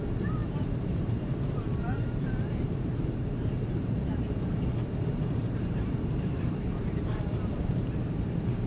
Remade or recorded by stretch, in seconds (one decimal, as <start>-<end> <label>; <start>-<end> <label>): 0.0-8.7 remade